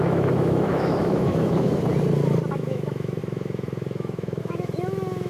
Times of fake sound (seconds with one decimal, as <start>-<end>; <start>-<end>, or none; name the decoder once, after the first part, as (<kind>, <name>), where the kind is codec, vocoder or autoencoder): 0.0-1.8 (autoencoder, DAC-VAE); 2.5-5.3